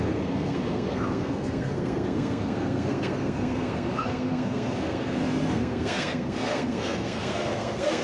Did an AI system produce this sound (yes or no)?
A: yes